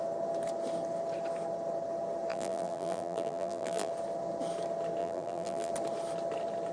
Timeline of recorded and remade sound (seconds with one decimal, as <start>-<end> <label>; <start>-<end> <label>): 0.0-2.3 recorded; 2.3-3.9 remade; 3.9-5.0 recorded; 5.0-5.7 remade; 5.7-6.7 recorded